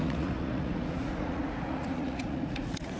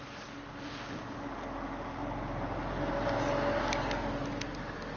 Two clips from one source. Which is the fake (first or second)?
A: first